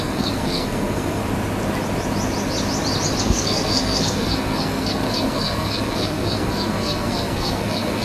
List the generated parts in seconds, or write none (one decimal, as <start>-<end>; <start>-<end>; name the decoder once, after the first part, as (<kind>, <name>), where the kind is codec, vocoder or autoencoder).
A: 0.0-1.2 (codec, SNAC); 3.2-8.0